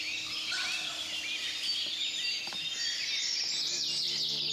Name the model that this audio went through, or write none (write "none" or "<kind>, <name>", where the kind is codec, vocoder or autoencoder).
none